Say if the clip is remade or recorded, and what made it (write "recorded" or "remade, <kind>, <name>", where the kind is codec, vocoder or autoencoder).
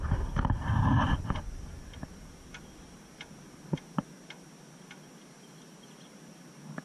recorded